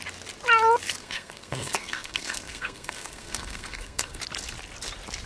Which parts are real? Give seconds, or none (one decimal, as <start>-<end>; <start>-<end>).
0.0-1.0; 4.2-5.3